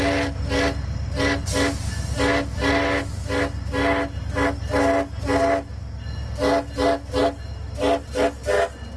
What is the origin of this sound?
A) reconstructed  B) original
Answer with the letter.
B